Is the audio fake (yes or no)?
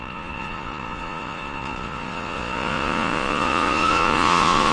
yes